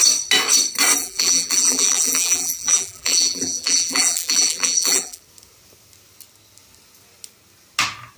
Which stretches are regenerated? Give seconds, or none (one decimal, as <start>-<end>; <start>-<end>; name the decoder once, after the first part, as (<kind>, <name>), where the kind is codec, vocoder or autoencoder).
1.0-5.2 (vocoder, BigVGAN v2)